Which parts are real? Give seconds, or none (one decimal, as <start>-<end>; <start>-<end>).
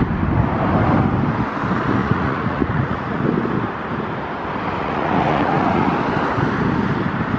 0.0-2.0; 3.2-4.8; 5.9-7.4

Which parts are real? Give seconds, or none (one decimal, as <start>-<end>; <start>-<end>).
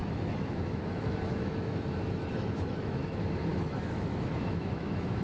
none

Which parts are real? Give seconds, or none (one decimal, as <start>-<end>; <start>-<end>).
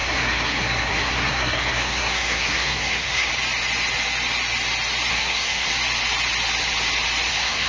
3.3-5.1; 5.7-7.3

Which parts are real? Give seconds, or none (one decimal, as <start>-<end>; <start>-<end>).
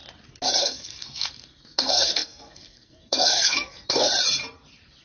0.0-0.6; 4.1-5.0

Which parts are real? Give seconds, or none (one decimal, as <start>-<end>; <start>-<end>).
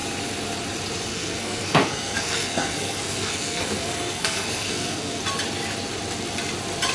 0.0-1.1; 5.2-6.9